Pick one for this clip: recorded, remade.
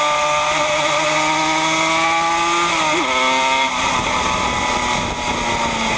recorded